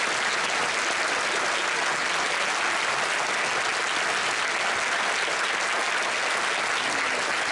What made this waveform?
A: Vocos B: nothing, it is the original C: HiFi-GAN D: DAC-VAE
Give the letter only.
B